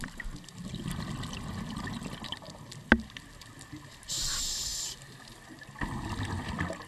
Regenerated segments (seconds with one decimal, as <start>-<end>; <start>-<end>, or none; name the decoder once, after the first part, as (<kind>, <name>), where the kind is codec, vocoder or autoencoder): none